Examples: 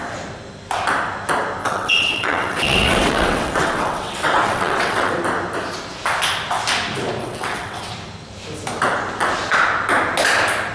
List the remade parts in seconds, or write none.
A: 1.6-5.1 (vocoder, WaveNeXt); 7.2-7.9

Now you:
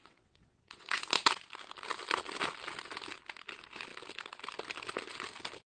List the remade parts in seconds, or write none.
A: 0.0-1.0 (vocoder, WaveNeXt)

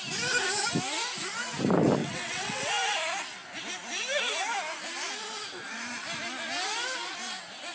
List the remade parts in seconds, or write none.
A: 2.0-2.7 (vocoder, WaveNeXt)

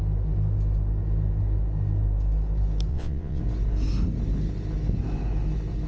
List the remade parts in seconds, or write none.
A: 2.9-3.4 (vocoder, WaveNeXt)

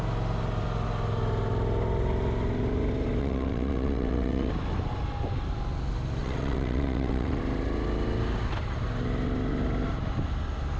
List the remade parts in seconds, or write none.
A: 3.2-4.5 (vocoder, WaveNeXt); 6.2-7.4

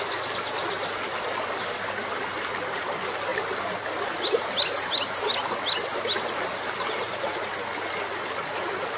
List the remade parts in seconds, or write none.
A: none

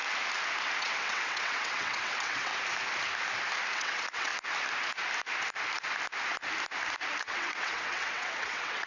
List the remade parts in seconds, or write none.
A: 0.8-2.5 (vocoder, WaveNeXt); 3.7-4.3; 7.2-8.9

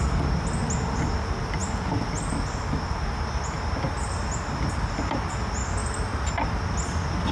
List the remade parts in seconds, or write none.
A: none